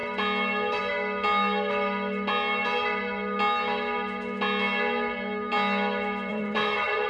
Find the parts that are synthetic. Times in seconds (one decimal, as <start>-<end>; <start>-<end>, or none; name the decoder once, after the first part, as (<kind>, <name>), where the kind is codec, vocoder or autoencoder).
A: 6.3-7.1 (vocoder, Vocos)